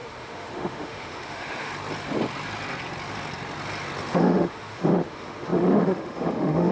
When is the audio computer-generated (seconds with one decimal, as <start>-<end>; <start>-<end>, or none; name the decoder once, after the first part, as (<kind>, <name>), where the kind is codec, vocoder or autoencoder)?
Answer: 0.0-1.7 (autoencoder, DAC-VAE); 4.1-6.7